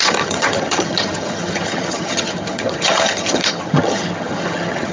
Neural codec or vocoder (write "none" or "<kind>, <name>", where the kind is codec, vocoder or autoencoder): vocoder, HiFi-GAN